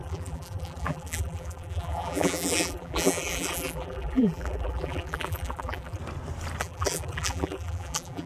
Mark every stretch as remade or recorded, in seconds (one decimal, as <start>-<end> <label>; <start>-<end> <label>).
0.0-6.0 remade; 6.0-6.6 recorded; 6.6-8.3 remade